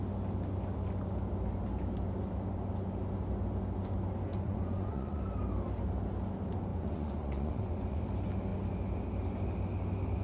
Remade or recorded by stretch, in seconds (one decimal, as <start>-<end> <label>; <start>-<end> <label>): 0.0-4.3 recorded; 4.3-5.2 remade; 5.2-6.7 recorded; 6.7-8.0 remade; 8.0-10.2 recorded